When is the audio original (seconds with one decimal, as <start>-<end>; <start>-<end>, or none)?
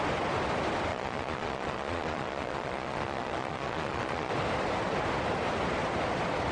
0.0-0.9; 4.3-6.5